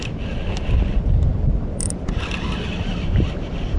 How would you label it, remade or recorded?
remade